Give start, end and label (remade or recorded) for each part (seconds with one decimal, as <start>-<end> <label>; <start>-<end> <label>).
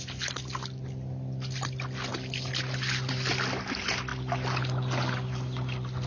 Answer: 0.0-6.1 recorded